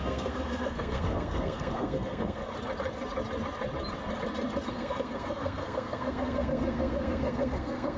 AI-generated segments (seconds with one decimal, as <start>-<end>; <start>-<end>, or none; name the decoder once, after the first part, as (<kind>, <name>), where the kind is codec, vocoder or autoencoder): 0.0-2.4 (codec, SNAC); 4.7-8.0

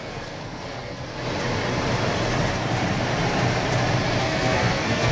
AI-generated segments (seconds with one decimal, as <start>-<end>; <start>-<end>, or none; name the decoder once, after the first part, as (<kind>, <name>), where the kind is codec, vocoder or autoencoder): 0.0-1.1 (codec, SNAC); 4.2-5.1

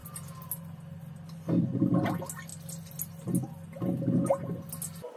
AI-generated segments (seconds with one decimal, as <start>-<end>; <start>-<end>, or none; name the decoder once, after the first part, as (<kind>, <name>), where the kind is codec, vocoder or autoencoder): none

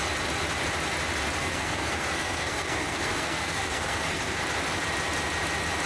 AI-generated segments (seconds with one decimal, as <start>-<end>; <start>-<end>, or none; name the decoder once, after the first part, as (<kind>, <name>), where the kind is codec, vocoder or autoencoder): 1.4-4.4 (codec, SNAC)

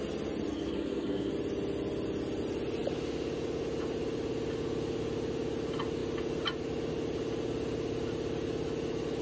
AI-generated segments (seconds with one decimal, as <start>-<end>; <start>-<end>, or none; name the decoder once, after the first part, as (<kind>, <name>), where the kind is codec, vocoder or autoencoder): 0.5-1.3 (codec, SNAC)

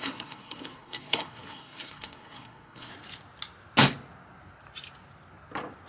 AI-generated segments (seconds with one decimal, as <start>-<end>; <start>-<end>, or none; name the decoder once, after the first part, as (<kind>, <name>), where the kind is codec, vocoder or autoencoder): 0.0-2.9 (codec, SNAC)